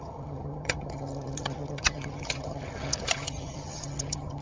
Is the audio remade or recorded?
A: remade